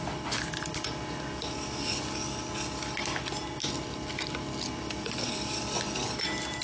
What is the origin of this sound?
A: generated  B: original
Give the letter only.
B